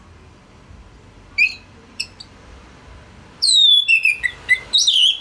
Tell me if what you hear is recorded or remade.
remade